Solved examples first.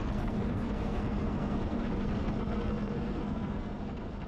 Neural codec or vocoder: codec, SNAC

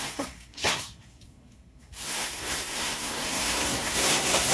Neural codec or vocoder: codec, SNAC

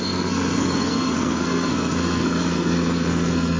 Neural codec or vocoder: codec, SNAC